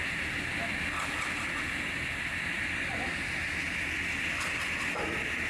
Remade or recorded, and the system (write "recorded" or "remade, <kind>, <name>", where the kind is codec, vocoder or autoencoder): recorded